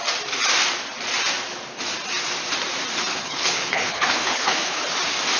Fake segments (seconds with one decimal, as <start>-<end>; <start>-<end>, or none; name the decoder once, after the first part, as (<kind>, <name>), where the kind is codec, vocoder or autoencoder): 3.1-4.9 (codec, HILCodec)